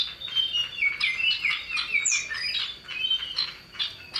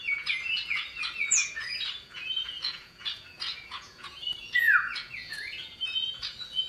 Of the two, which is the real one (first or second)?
first